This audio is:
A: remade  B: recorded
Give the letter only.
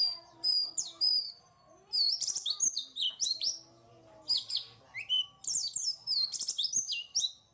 B